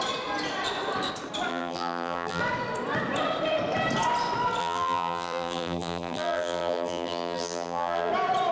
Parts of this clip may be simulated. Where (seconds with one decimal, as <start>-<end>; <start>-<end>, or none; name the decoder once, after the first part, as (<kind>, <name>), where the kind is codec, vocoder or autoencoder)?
1.5-2.4 (vocoder, BigVGAN v2); 4.6-8.1